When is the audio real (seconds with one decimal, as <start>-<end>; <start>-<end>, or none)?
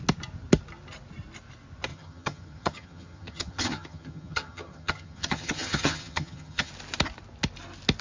0.0-1.9; 6.7-8.0